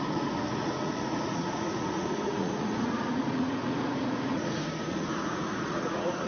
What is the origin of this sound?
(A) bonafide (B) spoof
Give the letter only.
B